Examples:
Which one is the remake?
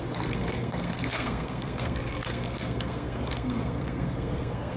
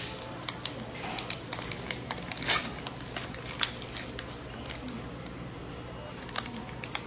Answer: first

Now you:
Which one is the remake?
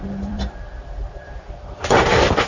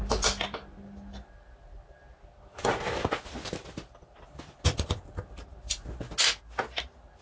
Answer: first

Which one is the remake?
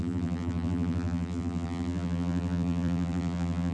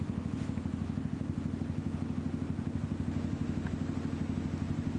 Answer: first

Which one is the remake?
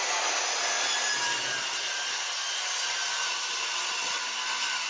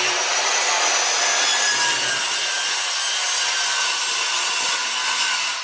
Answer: first